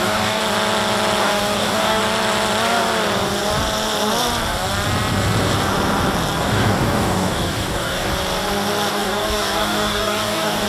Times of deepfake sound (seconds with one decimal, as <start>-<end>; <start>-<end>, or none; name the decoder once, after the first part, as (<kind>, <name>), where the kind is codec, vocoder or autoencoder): 0.0-0.4 (codec, DAC); 1.2-2.0; 6.4-8.1; 8.9-10.7